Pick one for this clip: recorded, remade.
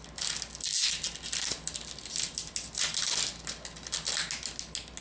recorded